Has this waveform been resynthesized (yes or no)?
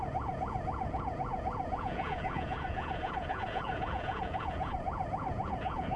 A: yes